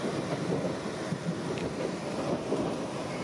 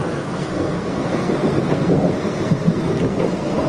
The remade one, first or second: second